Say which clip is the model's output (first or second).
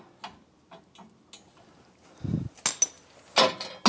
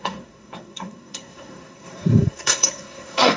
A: second